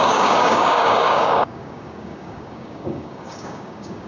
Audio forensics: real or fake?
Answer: fake